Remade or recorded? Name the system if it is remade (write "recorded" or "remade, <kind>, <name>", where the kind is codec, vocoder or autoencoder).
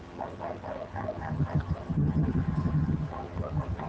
remade, vocoder, HiFi-GAN